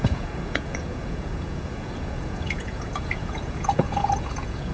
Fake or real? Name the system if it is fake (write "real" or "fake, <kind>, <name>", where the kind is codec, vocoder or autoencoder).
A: fake, vocoder, Vocos